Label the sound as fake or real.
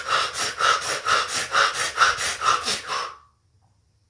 real